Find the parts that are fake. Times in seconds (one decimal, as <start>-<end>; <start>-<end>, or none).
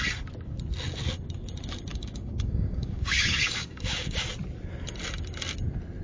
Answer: 1.9-4.3